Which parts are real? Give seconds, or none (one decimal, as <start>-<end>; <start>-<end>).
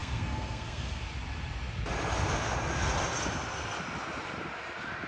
1.0-5.1